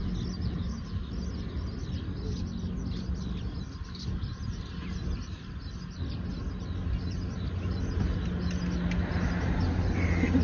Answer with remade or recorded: recorded